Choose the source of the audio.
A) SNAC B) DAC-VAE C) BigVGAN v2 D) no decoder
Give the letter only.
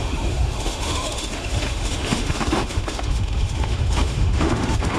B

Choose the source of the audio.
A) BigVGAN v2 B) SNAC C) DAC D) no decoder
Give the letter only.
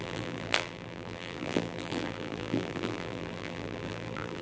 A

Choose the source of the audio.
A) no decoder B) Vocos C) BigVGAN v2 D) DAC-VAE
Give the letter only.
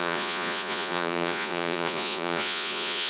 B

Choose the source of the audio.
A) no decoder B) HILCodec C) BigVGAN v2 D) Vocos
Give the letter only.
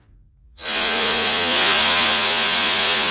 D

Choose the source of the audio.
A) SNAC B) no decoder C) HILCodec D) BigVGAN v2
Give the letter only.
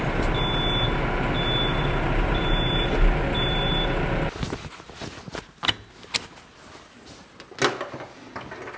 B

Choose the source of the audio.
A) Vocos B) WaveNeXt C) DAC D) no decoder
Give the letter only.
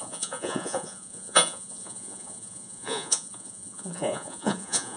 A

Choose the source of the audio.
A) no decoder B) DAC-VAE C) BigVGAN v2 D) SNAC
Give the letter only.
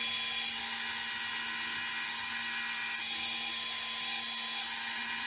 A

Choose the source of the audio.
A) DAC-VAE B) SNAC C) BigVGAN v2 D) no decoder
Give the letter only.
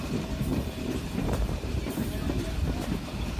C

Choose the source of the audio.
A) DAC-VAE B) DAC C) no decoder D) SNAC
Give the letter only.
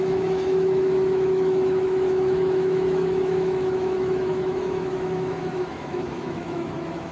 A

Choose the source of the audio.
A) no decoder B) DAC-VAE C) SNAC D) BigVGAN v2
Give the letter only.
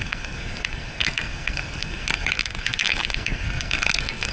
C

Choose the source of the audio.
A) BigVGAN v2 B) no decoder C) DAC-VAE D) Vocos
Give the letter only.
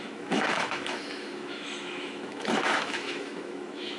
C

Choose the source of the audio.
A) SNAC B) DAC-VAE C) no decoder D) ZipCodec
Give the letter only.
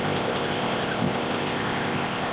D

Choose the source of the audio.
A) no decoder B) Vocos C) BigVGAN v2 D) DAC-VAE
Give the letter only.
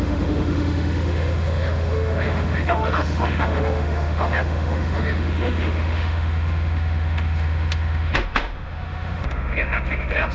D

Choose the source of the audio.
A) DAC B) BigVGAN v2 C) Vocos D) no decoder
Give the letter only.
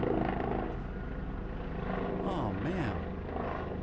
D